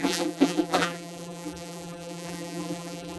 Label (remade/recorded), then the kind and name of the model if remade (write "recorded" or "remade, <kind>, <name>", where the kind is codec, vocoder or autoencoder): remade, vocoder, BigVGAN v2